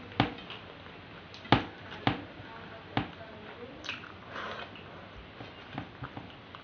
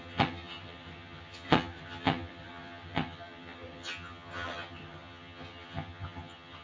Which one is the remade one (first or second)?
second